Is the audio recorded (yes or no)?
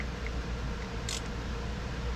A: yes